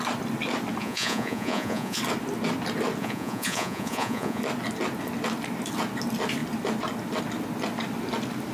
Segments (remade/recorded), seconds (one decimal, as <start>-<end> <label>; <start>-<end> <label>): 0.0-0.8 recorded; 0.8-2.0 remade; 2.0-3.0 recorded; 3.0-4.4 remade; 4.4-8.5 recorded